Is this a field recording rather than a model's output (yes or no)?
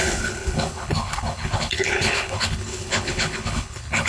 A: no